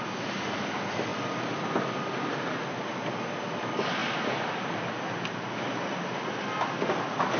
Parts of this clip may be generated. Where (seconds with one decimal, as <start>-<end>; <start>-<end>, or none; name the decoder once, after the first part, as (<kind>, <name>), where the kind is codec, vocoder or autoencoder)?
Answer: none